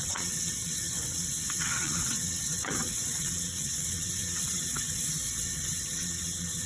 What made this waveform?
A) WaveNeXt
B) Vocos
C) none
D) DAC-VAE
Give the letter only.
A